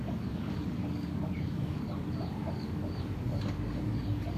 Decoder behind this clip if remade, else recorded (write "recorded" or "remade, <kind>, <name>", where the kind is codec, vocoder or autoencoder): remade, codec, DAC